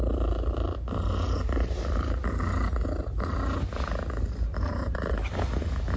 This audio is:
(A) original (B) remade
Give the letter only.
A